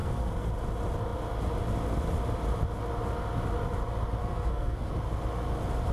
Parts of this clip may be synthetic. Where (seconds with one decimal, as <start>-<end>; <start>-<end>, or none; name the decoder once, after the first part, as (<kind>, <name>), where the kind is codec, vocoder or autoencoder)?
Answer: 0.0-0.5 (codec, SNAC); 4.2-4.9